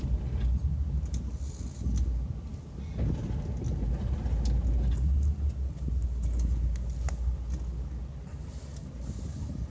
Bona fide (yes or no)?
yes